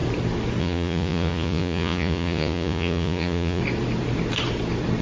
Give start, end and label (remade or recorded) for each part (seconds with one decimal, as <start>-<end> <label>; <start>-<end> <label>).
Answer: 0.0-0.6 recorded; 0.6-3.6 remade; 3.6-5.0 recorded

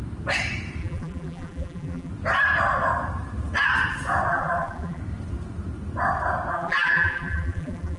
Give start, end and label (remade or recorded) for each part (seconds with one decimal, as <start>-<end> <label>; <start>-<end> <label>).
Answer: 0.0-0.8 recorded; 0.8-2.1 remade; 2.1-4.3 recorded; 4.3-5.0 remade; 5.0-6.5 recorded; 6.5-8.0 remade

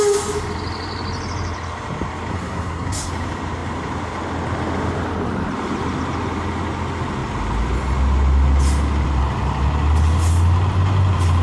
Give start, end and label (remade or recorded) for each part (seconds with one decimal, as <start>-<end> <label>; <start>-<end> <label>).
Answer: 0.0-2.3 recorded; 2.3-3.1 remade; 3.1-11.4 recorded